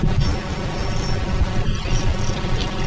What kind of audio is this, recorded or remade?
recorded